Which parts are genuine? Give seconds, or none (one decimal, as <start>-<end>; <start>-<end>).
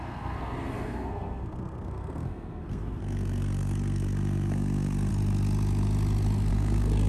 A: 5.1-6.5